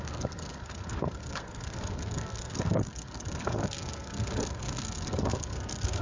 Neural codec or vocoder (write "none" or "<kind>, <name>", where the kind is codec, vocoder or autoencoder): codec, SNAC